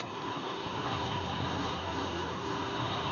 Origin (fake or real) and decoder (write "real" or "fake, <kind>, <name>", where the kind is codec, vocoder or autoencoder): fake, codec, SNAC